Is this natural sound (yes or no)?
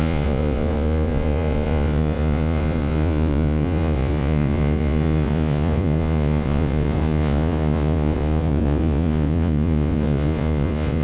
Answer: no